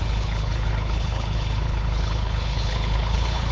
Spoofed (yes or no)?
yes